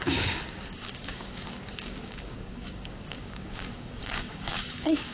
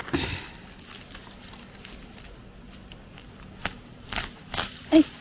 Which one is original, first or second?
second